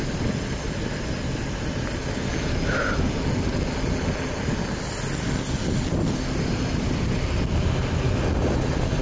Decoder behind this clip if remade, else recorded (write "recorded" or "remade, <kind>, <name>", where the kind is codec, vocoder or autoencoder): recorded